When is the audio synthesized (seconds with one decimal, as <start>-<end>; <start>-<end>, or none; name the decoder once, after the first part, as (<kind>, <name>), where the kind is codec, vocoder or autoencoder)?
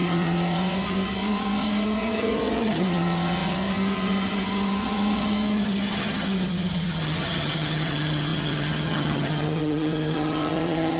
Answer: 0.0-11.0 (vocoder, HiFi-GAN)